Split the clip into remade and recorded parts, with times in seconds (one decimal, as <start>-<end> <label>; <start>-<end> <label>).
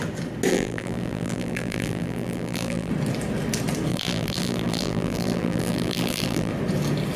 0.0-0.5 recorded; 0.5-2.9 remade; 2.9-3.9 recorded; 3.9-6.5 remade; 6.5-7.2 recorded